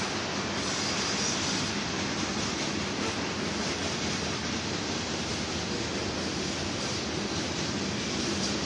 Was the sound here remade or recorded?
recorded